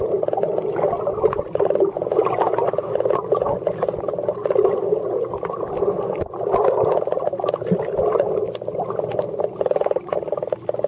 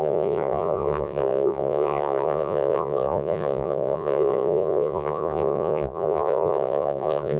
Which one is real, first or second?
first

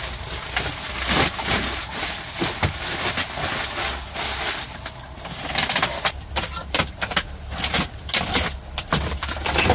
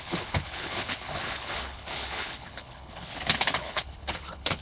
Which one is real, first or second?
first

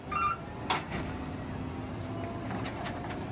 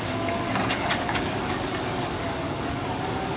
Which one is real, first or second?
first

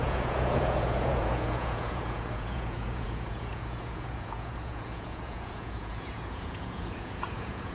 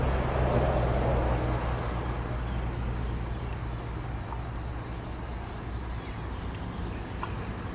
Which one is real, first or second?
second